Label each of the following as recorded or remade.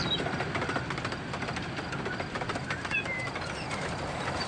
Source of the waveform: recorded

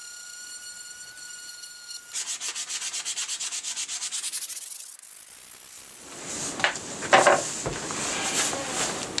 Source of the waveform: recorded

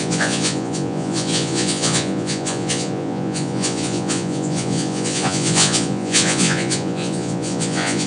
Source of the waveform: remade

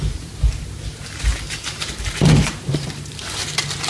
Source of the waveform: remade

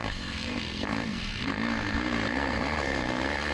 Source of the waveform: remade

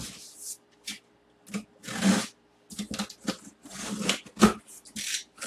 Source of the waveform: recorded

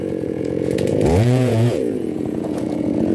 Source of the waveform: remade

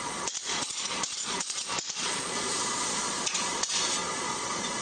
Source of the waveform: remade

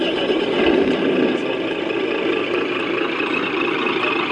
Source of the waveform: recorded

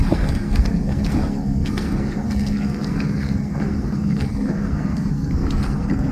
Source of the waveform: remade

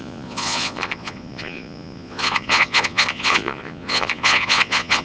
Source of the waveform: remade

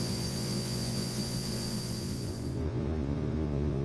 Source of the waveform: remade